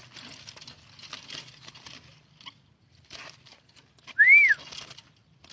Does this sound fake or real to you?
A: real